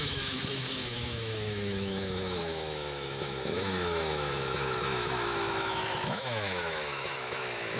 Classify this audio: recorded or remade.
remade